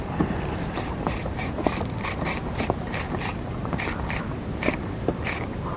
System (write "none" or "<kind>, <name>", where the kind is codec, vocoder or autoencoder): vocoder, BigVGAN v2